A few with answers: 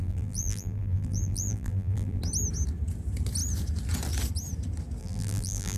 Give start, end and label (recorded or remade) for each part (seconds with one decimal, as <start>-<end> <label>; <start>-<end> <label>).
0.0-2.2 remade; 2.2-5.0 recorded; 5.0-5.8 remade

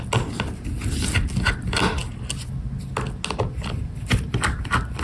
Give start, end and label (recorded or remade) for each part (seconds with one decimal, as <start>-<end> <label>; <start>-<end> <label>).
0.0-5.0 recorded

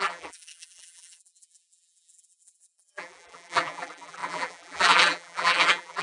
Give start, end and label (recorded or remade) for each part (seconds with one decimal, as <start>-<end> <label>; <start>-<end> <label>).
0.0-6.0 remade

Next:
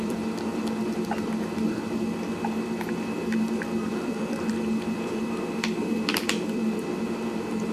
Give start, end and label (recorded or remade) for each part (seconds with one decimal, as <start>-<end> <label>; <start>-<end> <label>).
0.0-7.7 remade

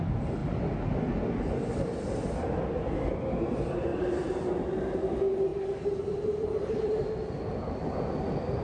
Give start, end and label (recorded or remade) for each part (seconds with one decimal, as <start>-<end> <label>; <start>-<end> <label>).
0.0-3.9 recorded; 3.9-4.5 remade; 4.5-5.5 recorded; 5.5-7.2 remade; 7.2-8.6 recorded

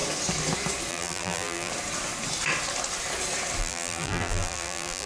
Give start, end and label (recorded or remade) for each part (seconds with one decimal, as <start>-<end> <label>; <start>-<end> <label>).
0.0-0.9 recorded; 0.9-1.7 remade; 1.7-3.6 recorded; 3.6-5.1 remade

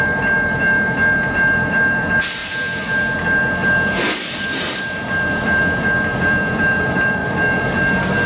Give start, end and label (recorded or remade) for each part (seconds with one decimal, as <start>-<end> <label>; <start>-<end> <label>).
0.0-2.4 remade; 2.4-4.8 recorded; 4.8-8.3 remade